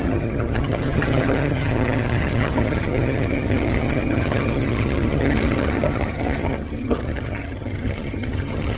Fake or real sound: fake